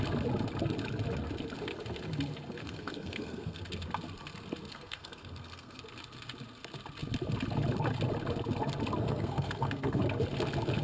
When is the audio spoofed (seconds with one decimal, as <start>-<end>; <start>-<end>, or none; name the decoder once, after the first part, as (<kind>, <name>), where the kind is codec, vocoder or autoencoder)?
2.6-3.6 (codec, SNAC); 4.7-5.8; 9.0-10.0